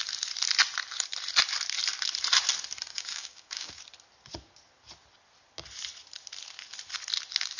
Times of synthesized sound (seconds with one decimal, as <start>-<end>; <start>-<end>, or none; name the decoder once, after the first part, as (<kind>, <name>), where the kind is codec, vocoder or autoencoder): 2.9-3.8 (codec, DAC)